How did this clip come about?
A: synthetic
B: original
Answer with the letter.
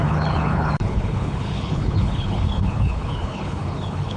A